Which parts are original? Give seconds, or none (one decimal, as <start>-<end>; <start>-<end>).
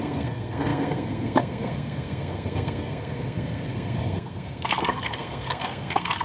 none